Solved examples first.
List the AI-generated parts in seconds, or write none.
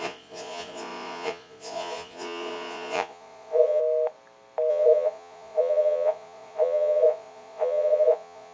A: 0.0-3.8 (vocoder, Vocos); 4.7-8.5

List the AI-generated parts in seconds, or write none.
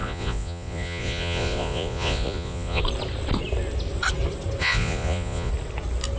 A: 0.0-2.8 (vocoder, Vocos); 4.6-5.5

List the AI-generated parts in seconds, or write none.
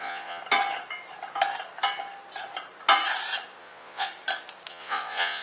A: 0.0-0.4 (vocoder, Vocos); 3.6-4.1; 4.7-5.4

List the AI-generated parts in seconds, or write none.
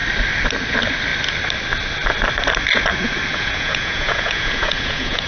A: 3.3-5.3 (vocoder, Vocos)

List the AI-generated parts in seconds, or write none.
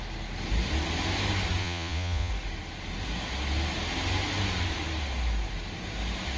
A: 1.6-2.3 (vocoder, Vocos)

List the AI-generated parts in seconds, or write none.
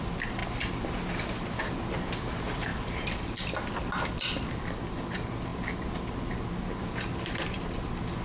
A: none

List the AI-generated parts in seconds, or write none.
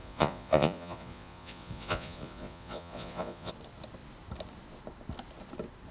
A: 0.0-3.5 (vocoder, Vocos)